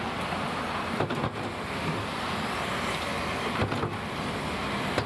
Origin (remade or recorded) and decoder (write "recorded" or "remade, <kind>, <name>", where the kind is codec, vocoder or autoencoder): recorded